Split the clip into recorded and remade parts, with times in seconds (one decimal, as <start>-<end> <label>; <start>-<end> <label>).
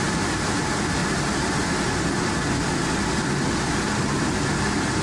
0.0-5.0 recorded